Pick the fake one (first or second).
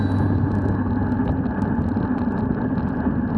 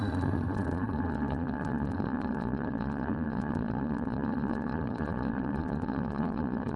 second